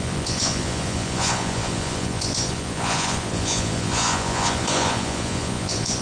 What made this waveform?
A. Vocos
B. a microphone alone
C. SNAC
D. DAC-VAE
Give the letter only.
A